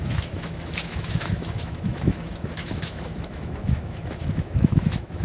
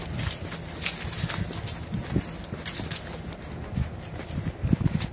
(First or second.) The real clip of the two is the second